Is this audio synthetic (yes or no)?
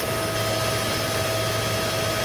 no